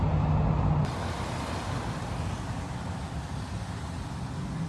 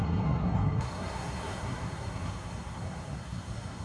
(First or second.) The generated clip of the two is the second